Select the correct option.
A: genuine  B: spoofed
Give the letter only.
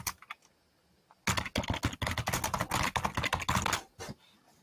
A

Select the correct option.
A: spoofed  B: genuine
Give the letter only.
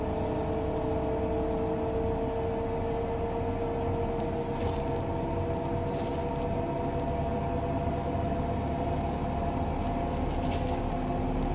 B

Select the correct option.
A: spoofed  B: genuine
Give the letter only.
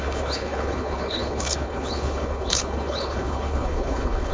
A